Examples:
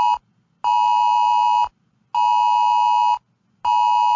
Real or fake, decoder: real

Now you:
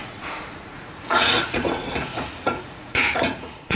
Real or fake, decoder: fake, vocoder, Vocos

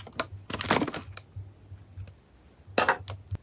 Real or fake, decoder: real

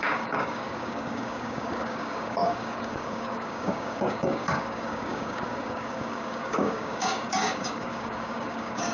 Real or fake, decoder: fake, codec, DAC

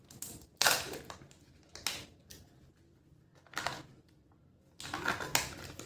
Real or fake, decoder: real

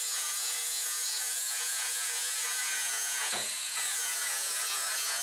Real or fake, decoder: fake, vocoder, Vocos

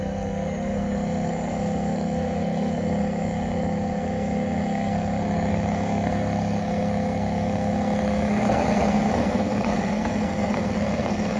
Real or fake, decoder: fake, codec, SNAC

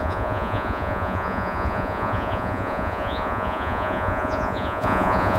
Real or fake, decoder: fake, vocoder, Vocos